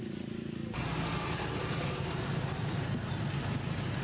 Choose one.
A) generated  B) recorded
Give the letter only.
B